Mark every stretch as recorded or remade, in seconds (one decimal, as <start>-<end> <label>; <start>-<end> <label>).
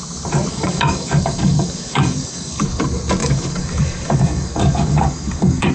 0.0-0.5 recorded; 0.5-2.8 remade; 2.8-3.2 recorded; 3.2-5.7 remade